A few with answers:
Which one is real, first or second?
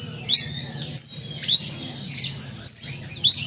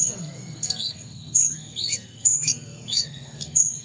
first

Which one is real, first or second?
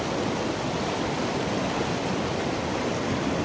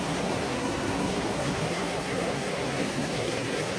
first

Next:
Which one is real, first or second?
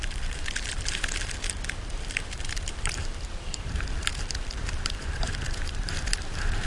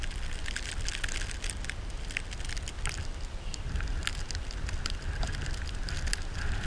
second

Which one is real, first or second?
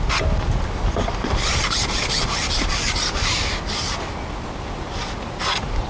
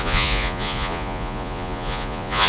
first